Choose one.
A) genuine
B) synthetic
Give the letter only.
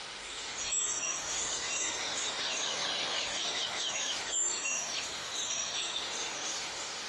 B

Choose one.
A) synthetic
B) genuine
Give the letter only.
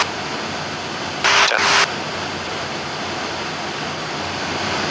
B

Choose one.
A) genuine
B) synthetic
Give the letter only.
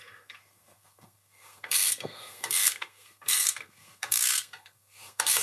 B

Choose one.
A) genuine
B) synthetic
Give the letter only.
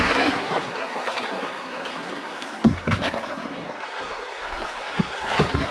B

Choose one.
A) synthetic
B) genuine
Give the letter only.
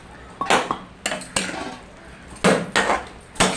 B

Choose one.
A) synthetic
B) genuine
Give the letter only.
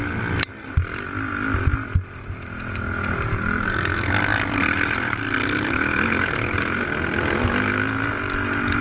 B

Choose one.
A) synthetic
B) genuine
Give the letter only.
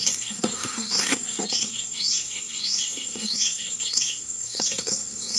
A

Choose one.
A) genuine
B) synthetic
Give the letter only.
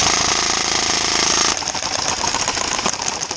A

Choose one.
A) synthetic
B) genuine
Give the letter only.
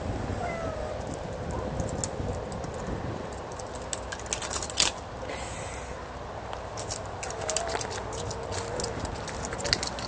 B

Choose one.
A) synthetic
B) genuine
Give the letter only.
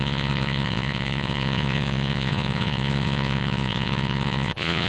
A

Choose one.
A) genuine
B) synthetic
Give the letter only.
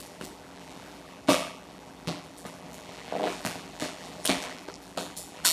B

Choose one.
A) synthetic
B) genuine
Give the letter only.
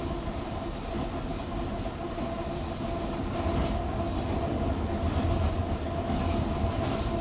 B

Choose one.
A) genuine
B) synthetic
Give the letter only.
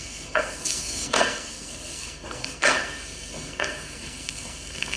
B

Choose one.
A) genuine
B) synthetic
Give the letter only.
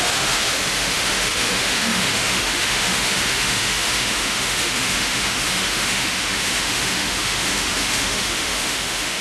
B